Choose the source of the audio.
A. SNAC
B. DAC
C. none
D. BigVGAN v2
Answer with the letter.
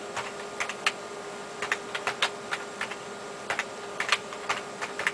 C